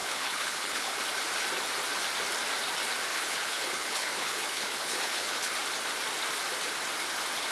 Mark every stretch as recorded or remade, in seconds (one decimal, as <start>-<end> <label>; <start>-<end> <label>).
0.0-1.0 remade; 1.0-3.1 recorded; 3.1-5.5 remade; 5.5-7.5 recorded